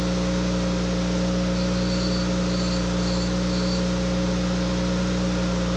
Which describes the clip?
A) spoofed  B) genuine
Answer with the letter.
B